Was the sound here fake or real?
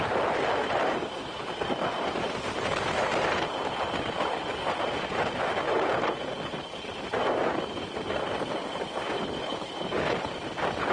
real